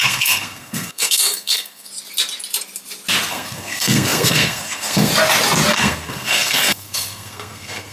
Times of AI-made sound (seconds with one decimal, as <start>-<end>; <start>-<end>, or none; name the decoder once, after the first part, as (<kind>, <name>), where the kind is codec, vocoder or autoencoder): 0.0-1.9 (codec, SNAC); 3.3-5.1; 5.7-7.9